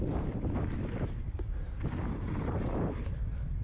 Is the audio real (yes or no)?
yes